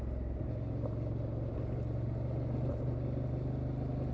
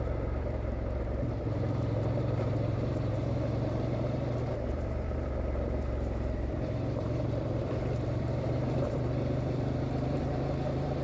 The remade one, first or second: second